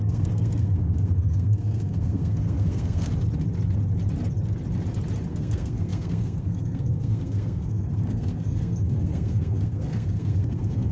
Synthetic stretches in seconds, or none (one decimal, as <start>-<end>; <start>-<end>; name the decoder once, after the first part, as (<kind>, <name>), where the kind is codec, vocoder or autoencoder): 0.0-3.1 (codec, SNAC); 5.3-10.9